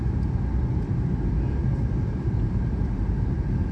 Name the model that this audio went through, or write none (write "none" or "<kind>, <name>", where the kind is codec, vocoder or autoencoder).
none